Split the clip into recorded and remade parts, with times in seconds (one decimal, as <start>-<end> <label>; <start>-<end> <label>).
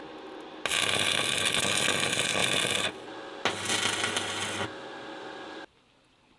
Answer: 0.0-6.4 recorded